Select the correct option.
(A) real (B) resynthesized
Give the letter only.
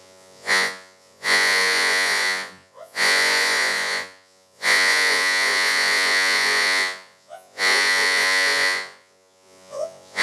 B